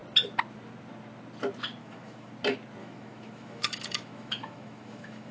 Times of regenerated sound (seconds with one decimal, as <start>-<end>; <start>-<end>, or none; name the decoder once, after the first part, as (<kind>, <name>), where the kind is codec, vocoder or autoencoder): 1.8-2.3 (autoencoder, DAC-VAE); 2.8-5.3